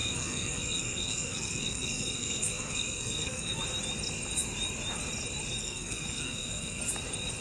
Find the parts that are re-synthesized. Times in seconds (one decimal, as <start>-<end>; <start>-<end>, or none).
0.0-3.6; 5.6-6.8